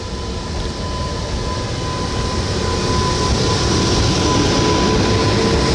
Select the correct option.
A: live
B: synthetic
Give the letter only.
A